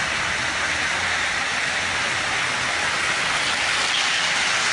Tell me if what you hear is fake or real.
real